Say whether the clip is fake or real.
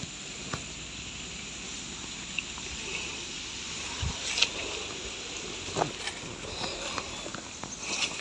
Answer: real